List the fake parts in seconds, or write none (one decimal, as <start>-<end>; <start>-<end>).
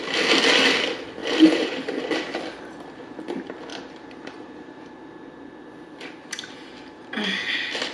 1.2-1.9; 3.7-4.9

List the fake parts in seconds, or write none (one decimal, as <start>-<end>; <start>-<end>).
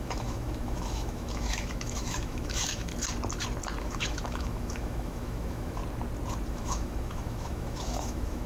0.0-2.9; 3.8-5.8; 6.5-8.5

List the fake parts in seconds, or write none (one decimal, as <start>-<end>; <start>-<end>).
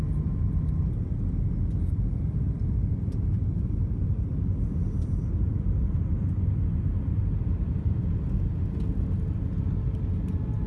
none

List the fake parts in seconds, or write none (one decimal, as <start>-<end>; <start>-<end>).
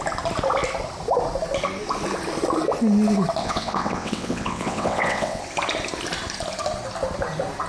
3.4-5.4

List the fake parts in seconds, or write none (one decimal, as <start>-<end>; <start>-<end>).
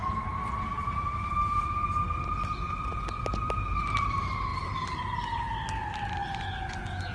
none